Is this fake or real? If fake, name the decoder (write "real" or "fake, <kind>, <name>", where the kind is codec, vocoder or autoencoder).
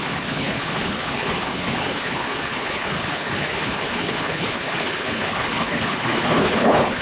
fake, codec, HILCodec